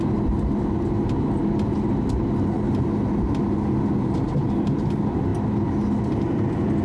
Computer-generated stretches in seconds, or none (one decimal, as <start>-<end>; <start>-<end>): none